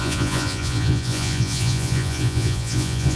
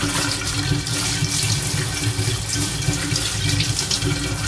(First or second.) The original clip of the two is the second